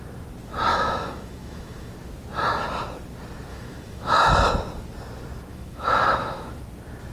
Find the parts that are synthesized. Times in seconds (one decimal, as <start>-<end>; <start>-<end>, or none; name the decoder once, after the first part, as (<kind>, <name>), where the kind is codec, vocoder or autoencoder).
0.7-1.9 (autoencoder, DAC-VAE); 3.5-4.3; 5.5-6.6